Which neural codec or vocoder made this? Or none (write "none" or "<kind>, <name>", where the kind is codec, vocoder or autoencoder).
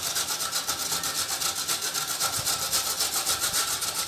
none